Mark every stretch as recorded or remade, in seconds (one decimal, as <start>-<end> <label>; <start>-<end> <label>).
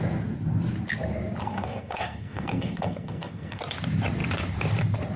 0.0-1.4 recorded; 1.4-3.6 remade; 3.6-5.2 recorded